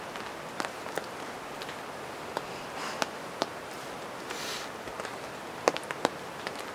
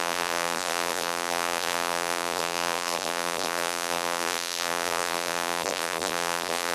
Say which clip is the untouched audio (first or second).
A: first